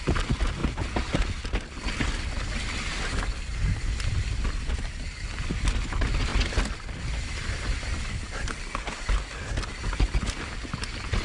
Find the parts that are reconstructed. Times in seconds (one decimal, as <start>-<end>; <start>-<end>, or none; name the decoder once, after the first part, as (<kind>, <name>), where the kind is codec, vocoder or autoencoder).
none